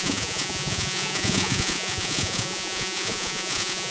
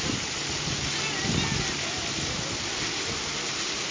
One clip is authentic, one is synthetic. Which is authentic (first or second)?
second